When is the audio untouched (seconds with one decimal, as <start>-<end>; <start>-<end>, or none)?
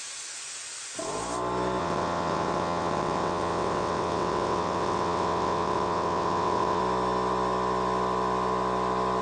0.0-1.8; 6.8-9.2